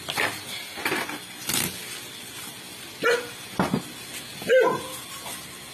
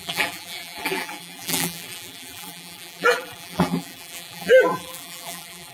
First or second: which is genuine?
first